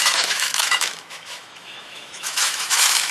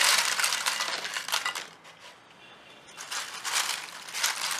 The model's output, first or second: first